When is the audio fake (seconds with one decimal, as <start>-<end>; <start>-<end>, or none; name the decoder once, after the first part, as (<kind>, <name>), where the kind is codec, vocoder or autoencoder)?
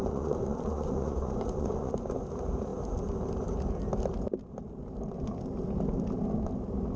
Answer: 0.0-1.9 (vocoder, Vocos)